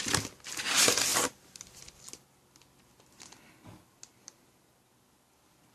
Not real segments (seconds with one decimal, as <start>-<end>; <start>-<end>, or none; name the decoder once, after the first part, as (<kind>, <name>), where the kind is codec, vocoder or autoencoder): none